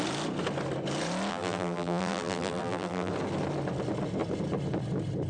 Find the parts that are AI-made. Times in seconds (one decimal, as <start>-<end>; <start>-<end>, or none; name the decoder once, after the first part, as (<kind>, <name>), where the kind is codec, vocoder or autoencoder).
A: 1.3-3.1 (vocoder, BigVGAN v2)